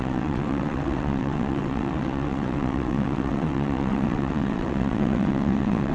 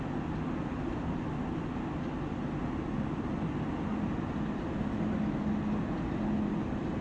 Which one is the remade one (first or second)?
first